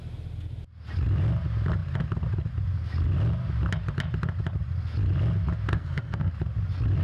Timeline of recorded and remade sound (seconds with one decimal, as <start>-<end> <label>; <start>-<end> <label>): 0.0-5.7 recorded; 5.7-6.3 remade; 6.3-7.0 recorded